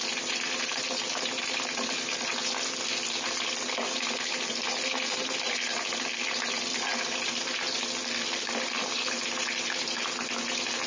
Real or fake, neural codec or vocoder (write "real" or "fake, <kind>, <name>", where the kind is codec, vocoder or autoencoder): real